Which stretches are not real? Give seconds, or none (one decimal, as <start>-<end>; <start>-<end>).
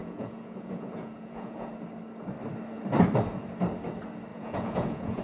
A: 0.0-1.7; 4.3-5.2